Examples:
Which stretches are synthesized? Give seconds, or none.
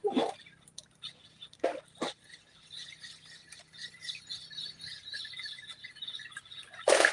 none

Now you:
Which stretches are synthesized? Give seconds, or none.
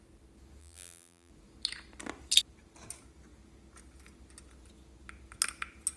0.6-1.3 (vocoder, BigVGAN v2)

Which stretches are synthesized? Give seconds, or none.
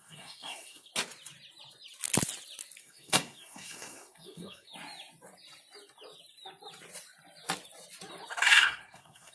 0.0-0.9 (codec, SNAC); 2.8-4.7; 8.4-9.3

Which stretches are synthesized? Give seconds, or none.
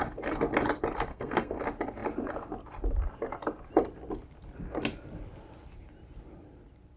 1.1-1.6 (codec, SNAC)